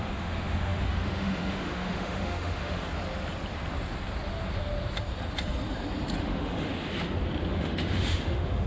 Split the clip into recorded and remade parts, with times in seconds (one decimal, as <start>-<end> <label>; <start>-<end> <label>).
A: 0.0-2.9 remade; 2.9-6.2 recorded; 6.2-6.7 remade; 6.7-7.5 recorded; 7.5-8.7 remade